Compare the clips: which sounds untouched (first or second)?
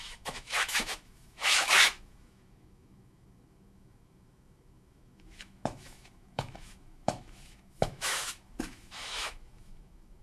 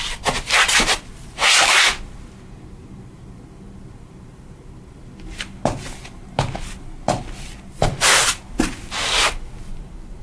second